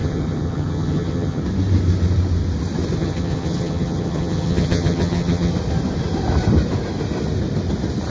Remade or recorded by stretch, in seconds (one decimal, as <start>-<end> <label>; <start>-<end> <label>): 0.0-1.4 remade; 1.4-3.0 recorded; 3.0-5.5 remade; 5.5-8.1 recorded